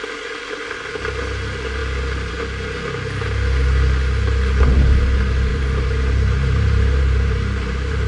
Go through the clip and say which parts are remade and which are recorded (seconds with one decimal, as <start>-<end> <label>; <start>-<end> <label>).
0.0-5.5 recorded; 5.5-8.1 remade